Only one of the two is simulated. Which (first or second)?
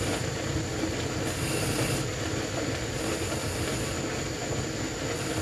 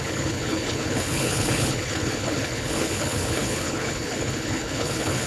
second